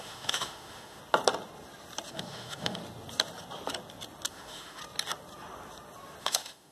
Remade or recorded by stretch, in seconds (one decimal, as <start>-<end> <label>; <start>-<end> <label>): 0.0-1.0 remade; 1.0-2.1 recorded; 2.1-2.8 remade; 2.8-4.3 recorded; 4.3-4.8 remade; 4.8-6.2 recorded; 6.2-6.7 remade